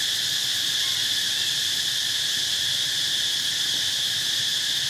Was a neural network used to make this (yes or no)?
no